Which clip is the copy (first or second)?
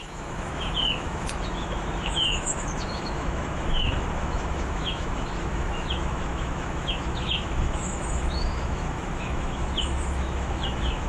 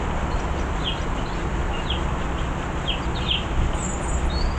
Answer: first